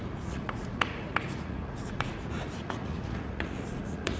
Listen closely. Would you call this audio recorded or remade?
remade